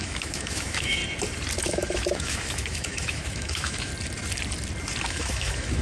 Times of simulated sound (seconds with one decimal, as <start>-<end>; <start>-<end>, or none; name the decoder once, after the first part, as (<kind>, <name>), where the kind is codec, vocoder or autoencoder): 0.0-1.0 (autoencoder, DAC-VAE); 1.6-3.9; 5.0-5.8